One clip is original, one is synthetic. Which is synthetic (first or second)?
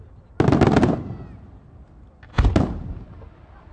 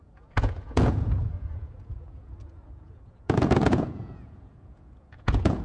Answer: second